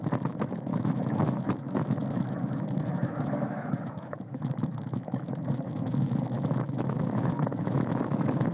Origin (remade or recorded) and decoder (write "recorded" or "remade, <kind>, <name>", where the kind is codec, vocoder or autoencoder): remade, autoencoder, DAC-VAE